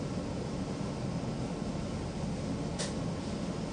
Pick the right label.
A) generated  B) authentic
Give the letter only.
B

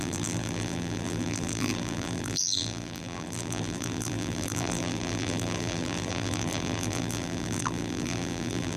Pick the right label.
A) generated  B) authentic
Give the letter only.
A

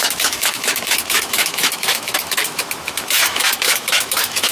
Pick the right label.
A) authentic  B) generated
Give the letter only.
B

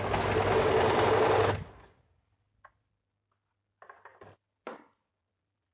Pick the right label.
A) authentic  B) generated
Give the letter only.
A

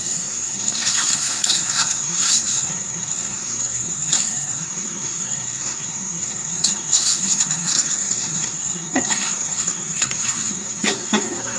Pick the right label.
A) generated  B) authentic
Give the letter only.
A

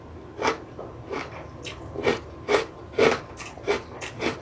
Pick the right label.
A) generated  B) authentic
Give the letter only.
B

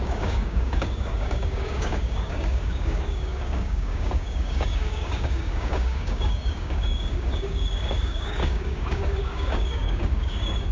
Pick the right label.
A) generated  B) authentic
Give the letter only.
A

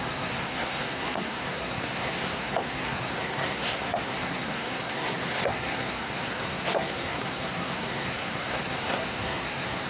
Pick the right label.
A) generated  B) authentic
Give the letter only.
A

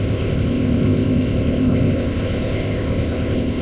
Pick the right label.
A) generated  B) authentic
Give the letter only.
A